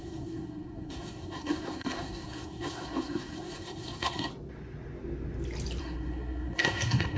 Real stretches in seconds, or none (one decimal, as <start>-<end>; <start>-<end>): 4.3-5.8